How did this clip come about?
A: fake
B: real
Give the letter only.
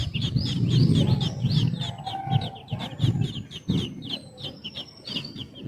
B